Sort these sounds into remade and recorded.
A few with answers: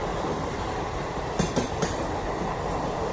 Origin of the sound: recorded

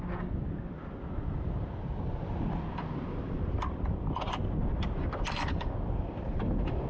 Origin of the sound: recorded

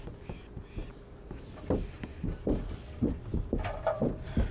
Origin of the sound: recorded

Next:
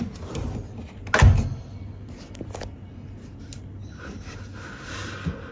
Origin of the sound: recorded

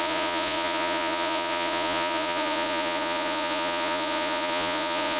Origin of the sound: remade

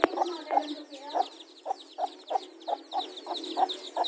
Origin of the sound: recorded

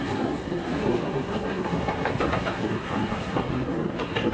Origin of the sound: remade